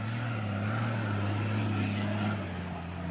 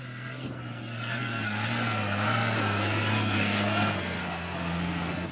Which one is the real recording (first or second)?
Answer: first